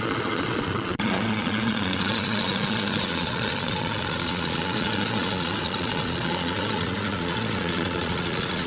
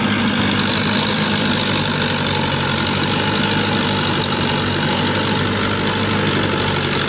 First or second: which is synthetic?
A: first